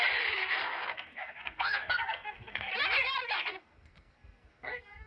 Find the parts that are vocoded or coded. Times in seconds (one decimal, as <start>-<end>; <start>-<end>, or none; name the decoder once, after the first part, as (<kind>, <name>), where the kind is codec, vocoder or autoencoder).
0.4-2.7 (codec, SNAC); 3.5-5.1